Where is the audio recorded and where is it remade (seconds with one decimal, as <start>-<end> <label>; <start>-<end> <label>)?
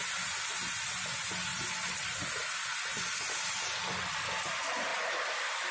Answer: 0.0-5.7 recorded